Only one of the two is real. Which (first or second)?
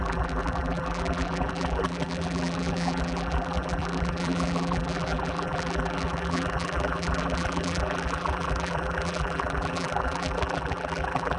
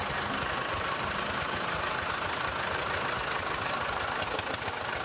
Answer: second